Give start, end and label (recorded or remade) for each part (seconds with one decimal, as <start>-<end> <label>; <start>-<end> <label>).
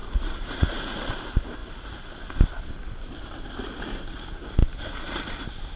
0.0-1.1 remade; 1.1-5.8 recorded